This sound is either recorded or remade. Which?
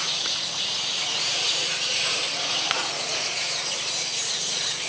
remade